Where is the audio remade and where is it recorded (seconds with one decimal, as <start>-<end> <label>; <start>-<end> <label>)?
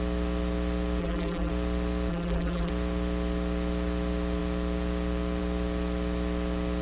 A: 0.0-1.0 recorded; 1.0-1.5 remade; 1.5-2.1 recorded; 2.1-2.7 remade; 2.7-6.8 recorded